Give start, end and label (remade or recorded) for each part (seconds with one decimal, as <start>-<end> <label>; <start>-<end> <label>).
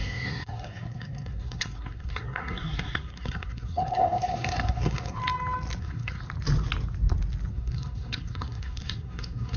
0.0-5.2 remade; 5.2-5.8 recorded; 5.8-6.2 remade; 6.2-7.5 recorded; 7.5-9.6 remade